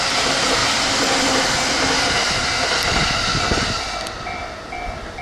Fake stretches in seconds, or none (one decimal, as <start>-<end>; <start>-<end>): none

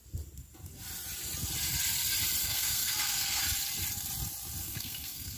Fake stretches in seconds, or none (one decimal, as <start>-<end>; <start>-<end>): 2.4-3.4; 4.6-5.4

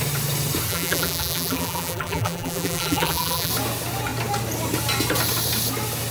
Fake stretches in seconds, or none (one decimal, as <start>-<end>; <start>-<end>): 0.7-3.5

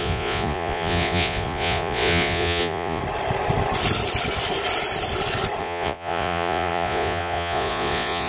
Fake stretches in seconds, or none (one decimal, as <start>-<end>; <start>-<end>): 0.0-3.0; 5.6-8.3

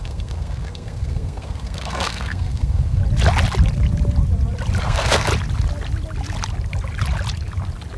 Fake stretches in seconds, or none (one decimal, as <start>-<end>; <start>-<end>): 0.0-3.0; 4.8-5.3